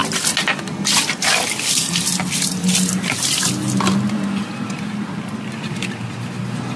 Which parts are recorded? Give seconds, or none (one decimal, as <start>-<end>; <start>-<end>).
0.0-6.8